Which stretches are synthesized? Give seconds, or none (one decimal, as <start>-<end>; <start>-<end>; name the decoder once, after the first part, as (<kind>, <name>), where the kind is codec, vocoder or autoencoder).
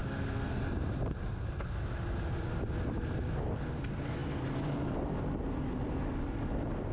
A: 0.0-0.6 (codec, SNAC)